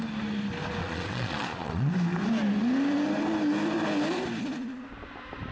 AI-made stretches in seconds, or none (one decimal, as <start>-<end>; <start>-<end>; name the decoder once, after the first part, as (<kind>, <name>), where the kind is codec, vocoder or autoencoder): 0.8-1.9 (vocoder, Vocos)